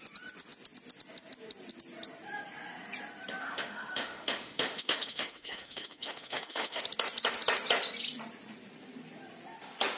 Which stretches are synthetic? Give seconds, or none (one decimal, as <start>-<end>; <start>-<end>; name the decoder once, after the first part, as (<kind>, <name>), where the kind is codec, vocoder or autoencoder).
3.4-6.8 (autoencoder, DAC-VAE)